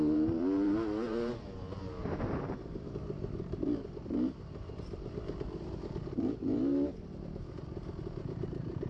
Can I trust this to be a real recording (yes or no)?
no